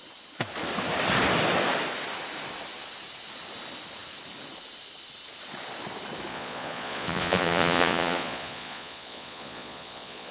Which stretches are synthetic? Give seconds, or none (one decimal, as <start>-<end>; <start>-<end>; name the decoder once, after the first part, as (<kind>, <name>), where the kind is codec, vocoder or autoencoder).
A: 6.3-10.3 (vocoder, Vocos)